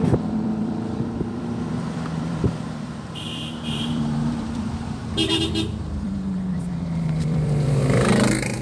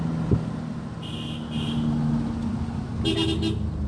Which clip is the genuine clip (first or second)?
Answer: second